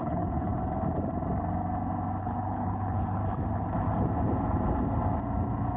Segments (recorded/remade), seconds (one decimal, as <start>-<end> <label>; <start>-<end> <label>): 0.0-0.5 remade; 0.5-2.2 recorded; 2.2-3.2 remade; 3.2-5.8 recorded